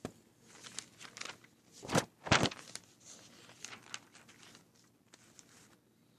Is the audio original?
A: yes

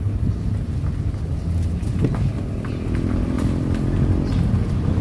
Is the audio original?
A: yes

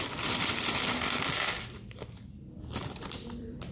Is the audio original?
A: no